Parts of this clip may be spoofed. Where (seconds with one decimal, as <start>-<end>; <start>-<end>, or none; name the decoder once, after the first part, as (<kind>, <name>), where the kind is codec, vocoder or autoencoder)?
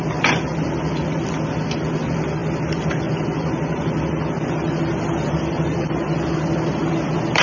none